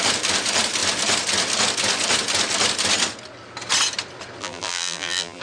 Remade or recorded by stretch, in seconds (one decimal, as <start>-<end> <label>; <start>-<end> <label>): 0.0-4.4 recorded; 4.4-5.4 remade